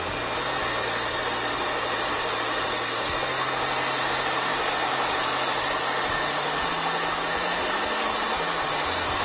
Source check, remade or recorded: recorded